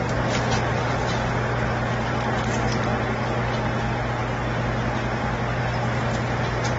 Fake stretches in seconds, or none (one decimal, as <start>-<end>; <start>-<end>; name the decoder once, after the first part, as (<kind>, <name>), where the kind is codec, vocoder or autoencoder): none